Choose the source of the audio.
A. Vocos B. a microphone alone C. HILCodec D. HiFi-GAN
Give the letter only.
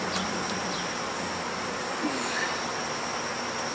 B